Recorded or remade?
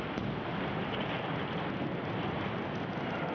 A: recorded